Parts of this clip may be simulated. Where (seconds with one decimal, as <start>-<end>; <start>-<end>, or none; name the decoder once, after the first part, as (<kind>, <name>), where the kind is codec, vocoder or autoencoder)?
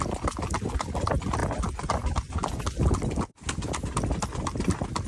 none